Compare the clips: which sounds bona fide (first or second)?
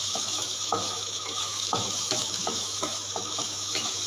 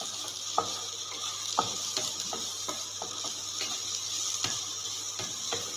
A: second